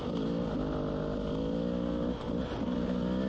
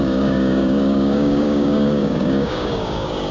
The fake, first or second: second